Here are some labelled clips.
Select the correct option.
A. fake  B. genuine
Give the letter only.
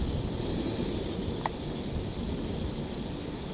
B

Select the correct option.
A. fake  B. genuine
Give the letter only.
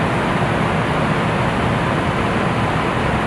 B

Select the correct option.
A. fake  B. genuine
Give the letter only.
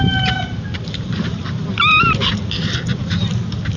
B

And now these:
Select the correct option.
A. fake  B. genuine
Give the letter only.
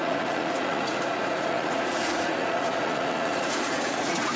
A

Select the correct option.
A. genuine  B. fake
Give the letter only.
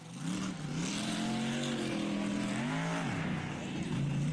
A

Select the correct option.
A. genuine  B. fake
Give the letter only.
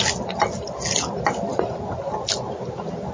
A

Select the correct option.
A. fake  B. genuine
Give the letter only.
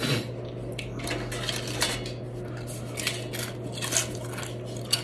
B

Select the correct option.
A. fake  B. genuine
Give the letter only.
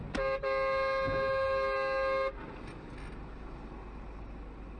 B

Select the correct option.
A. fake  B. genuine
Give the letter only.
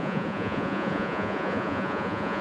A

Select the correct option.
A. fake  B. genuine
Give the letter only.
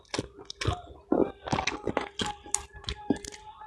B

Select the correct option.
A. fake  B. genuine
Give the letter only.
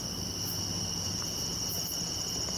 B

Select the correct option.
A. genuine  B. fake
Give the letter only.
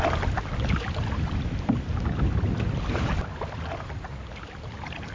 A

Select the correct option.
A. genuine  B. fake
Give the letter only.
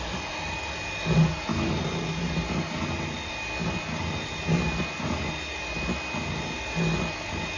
A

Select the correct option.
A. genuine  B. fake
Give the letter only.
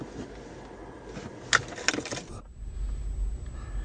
A